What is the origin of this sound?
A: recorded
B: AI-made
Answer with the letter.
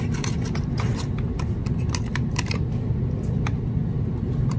A